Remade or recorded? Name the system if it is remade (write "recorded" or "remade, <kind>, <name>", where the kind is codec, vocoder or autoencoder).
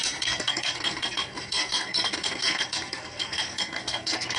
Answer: remade, codec, SNAC